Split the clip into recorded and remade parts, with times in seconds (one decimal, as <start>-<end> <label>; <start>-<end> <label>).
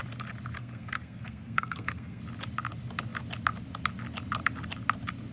0.0-0.6 recorded; 0.6-2.2 remade; 2.2-5.3 recorded